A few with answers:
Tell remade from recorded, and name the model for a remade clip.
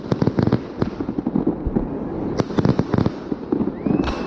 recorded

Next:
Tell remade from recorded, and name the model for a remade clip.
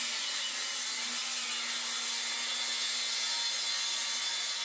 recorded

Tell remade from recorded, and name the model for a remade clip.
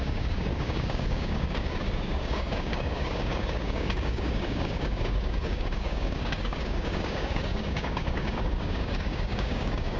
remade, codec, DAC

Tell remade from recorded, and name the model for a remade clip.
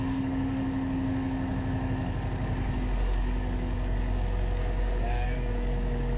remade, codec, DAC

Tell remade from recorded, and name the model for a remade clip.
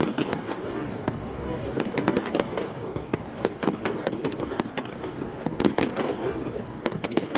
remade, codec, DAC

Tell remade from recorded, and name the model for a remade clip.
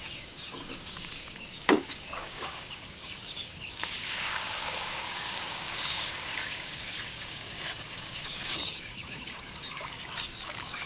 remade, codec, DAC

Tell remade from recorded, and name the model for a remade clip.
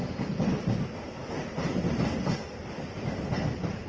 recorded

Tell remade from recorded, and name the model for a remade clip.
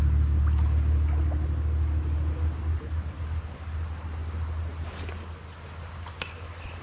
recorded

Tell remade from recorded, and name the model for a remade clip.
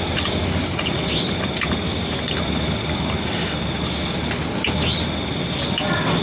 recorded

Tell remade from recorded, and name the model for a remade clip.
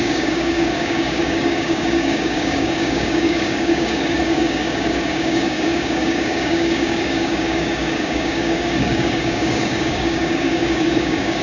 remade, codec, DAC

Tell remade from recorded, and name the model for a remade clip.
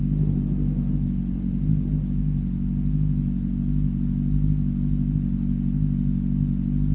recorded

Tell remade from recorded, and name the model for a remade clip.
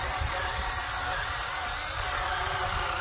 recorded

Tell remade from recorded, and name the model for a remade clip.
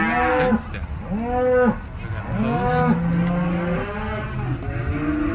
recorded